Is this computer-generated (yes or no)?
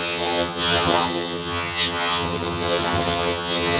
yes